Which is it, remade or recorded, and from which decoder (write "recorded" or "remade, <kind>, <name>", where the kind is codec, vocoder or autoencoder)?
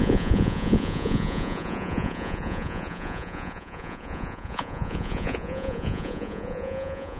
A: remade, vocoder, Vocos